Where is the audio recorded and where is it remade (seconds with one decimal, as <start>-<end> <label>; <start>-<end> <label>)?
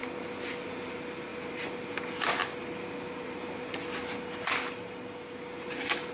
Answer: 0.0-6.1 recorded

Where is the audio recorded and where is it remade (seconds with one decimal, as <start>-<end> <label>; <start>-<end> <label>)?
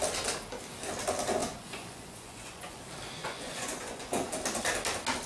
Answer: 0.0-1.4 recorded; 1.4-2.8 remade; 2.8-3.2 recorded; 3.2-4.3 remade; 4.3-5.3 recorded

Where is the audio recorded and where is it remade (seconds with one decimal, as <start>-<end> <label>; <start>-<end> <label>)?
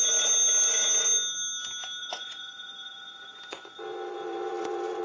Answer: 0.0-2.0 recorded; 2.0-5.0 remade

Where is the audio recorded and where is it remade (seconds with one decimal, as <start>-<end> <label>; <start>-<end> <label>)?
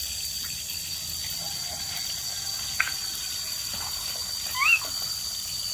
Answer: 0.0-5.7 recorded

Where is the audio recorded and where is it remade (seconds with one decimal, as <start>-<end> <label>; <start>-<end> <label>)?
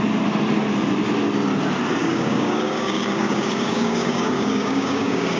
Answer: 0.0-2.0 recorded; 2.0-5.4 remade